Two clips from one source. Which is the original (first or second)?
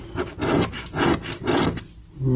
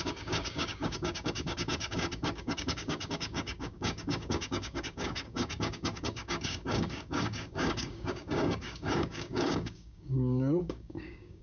first